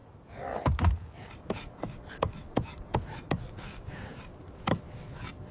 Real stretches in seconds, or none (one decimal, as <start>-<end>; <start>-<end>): 0.0-3.7; 4.2-5.5